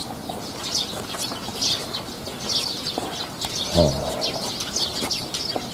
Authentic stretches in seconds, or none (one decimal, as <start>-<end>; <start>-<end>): 0.0-5.7